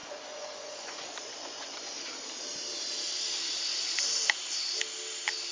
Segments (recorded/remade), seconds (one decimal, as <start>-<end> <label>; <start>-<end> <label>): 0.0-1.9 remade; 1.9-5.5 recorded